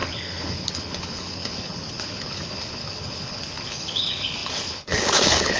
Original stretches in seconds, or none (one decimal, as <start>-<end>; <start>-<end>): none